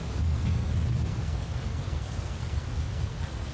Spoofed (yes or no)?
yes